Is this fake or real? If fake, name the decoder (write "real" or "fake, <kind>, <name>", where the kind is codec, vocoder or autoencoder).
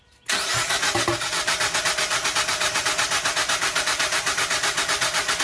real